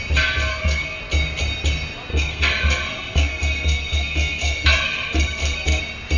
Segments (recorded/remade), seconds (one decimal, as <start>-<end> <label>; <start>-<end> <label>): 0.0-0.5 recorded; 0.5-1.0 remade; 1.0-2.1 recorded; 2.1-5.8 remade; 5.8-6.2 recorded